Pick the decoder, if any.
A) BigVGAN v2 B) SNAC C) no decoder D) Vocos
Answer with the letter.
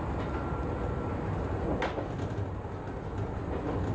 C